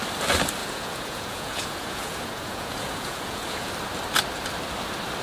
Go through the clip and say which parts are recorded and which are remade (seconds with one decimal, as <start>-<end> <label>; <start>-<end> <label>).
0.0-0.6 recorded; 0.6-3.7 remade; 3.7-5.2 recorded